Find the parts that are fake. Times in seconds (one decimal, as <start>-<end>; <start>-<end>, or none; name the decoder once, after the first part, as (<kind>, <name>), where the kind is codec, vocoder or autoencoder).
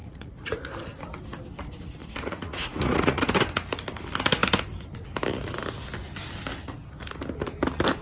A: 0.0-0.7 (vocoder, Vocos); 2.0-3.3